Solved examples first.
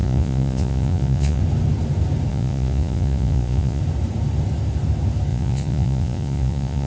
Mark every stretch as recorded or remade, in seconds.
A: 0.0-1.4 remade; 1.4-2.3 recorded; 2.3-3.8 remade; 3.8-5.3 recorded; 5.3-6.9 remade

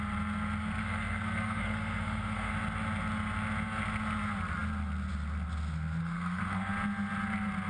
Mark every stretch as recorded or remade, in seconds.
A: 0.0-0.8 recorded; 0.8-2.5 remade; 2.5-6.0 recorded; 6.0-6.7 remade; 6.7-7.7 recorded

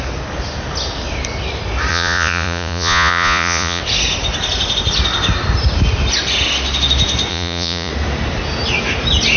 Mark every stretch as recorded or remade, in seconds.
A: 0.0-1.9 recorded; 1.9-3.8 remade; 3.8-7.3 recorded; 7.3-7.9 remade; 7.9-9.4 recorded